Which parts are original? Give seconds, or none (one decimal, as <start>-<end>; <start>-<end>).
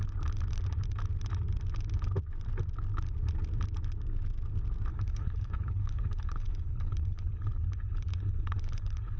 0.0-4.9